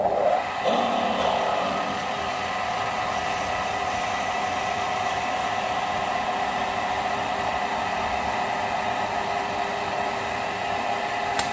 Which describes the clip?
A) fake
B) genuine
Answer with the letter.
B